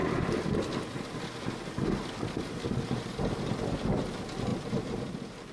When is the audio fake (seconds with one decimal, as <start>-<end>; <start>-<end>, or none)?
0.0-3.3; 4.5-5.0